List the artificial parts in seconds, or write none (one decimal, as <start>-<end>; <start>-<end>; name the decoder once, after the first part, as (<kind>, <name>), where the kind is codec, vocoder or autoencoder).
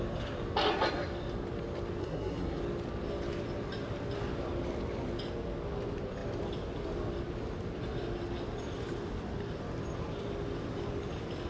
2.0-2.6 (codec, SNAC)